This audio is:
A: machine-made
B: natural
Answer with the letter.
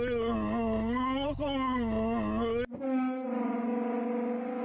B